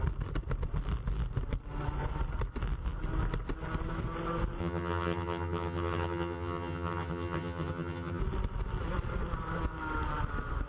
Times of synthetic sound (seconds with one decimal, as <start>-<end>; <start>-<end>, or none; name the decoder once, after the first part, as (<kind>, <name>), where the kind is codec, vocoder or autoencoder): 4.6-8.2 (vocoder, HiFi-GAN)